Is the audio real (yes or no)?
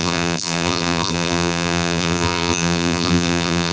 no